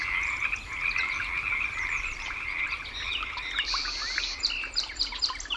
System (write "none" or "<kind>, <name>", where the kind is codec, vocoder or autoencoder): none